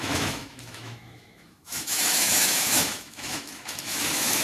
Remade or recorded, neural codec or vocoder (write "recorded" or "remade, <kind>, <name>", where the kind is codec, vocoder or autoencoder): remade, autoencoder, DAC-VAE